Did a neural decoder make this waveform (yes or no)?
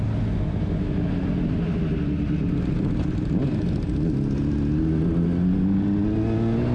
no